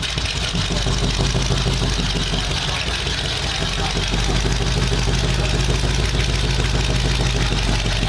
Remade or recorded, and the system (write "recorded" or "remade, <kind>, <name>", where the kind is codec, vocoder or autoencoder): recorded